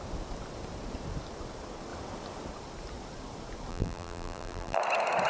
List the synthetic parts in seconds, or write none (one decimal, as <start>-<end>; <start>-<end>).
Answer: 3.7-4.8